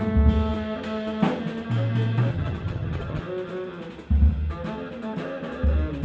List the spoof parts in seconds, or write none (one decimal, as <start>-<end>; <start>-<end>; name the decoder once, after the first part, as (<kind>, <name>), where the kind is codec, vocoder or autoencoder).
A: 2.3-3.2 (vocoder, HiFi-GAN)

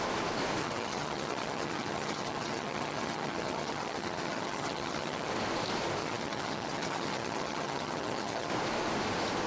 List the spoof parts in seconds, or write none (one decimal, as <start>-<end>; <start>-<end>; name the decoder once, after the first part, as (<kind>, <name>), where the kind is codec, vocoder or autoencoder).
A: 0.6-5.3 (vocoder, HiFi-GAN); 6.0-8.5

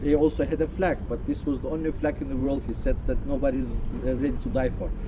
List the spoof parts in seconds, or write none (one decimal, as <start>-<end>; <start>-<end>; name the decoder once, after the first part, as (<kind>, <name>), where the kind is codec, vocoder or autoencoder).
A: 2.4-4.4 (vocoder, BigVGAN v2)

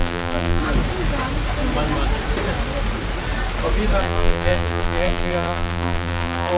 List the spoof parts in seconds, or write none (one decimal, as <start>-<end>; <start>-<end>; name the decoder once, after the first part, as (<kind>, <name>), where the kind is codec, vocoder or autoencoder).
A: 0.0-0.6 (vocoder, BigVGAN v2); 4.0-6.6

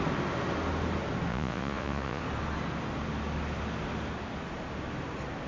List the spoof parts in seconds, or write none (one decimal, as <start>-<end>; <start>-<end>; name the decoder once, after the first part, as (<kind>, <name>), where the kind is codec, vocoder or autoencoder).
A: 1.3-2.2 (vocoder, Vocos)

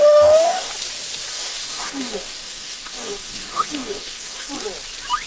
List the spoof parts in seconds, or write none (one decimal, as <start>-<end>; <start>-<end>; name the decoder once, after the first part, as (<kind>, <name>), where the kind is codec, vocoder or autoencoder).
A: 0.0-0.7 (codec, DAC); 1.3-4.5